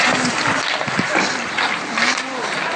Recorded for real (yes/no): yes